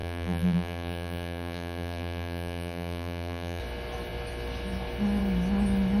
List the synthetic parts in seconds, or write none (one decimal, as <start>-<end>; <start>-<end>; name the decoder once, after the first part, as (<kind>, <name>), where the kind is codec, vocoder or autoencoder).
0.0-3.6 (vocoder, BigVGAN v2)